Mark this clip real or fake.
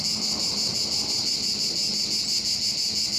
real